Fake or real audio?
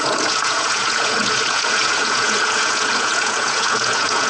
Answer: fake